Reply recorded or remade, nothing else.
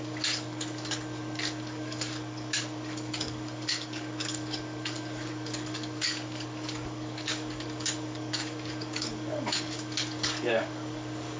remade